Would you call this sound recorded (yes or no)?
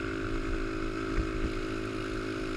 yes